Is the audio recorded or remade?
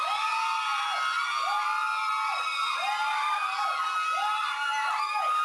recorded